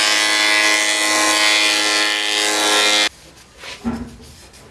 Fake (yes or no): no